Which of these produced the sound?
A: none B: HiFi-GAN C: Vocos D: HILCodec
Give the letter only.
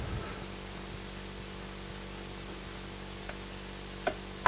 A